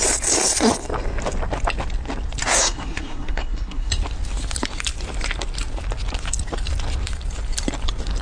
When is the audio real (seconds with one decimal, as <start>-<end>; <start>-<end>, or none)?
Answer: 0.0-2.4; 3.9-8.2